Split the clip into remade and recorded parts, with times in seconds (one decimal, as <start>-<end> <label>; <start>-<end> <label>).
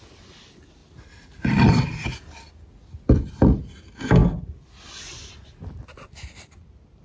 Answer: 0.0-7.0 recorded